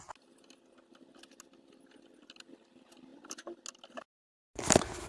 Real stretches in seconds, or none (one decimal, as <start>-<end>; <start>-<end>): 0.0-5.1